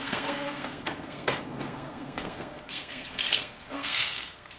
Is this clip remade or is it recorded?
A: remade